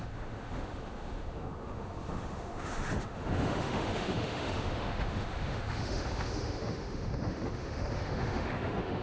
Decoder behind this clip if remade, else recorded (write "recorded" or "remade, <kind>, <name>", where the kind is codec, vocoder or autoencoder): remade, autoencoder, DAC-VAE